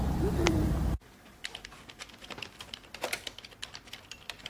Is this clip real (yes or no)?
no